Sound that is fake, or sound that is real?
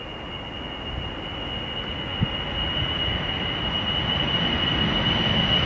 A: real